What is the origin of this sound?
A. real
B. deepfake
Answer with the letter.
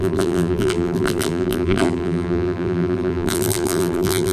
B